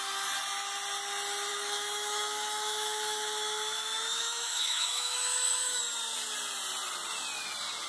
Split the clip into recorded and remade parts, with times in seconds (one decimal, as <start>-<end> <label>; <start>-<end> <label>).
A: 0.0-1.5 recorded; 1.5-5.8 remade; 5.8-7.9 recorded